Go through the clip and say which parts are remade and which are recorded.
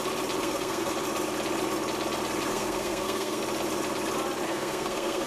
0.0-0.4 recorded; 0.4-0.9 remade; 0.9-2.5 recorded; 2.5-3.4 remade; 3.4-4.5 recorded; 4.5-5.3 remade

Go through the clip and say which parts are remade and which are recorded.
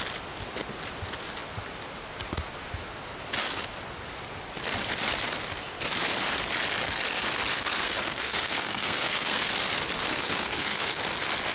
0.0-7.5 recorded; 7.5-9.5 remade; 9.5-10.1 recorded; 10.1-11.0 remade; 11.0-11.5 recorded